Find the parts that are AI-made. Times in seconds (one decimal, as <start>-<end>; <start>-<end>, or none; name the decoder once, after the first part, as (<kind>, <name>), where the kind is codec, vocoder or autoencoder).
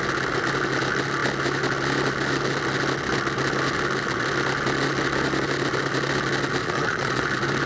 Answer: 6.6-7.2 (vocoder, Vocos)